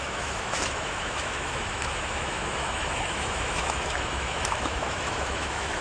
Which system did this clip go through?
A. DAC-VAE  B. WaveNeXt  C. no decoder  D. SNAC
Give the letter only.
A